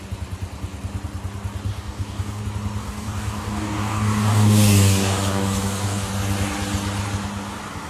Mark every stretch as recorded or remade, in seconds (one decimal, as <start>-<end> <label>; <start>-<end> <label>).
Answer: 0.0-1.7 recorded; 1.7-2.4 remade; 2.4-2.8 recorded; 2.8-6.1 remade; 6.1-7.9 recorded